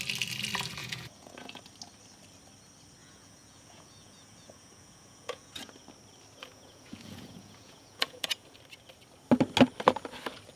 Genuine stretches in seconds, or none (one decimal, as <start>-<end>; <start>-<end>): 0.0-0.8; 1.6-3.0; 5.7-6.4; 8.6-10.6